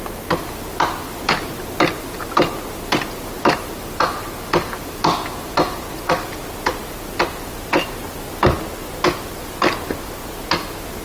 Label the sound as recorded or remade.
recorded